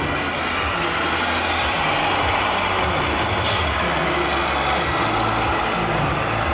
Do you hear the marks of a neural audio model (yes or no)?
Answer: no